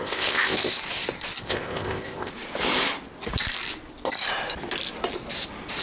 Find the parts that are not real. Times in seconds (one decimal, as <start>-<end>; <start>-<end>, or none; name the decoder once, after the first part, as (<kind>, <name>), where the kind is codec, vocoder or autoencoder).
0.0-0.8 (codec, ZipCodec); 1.4-2.3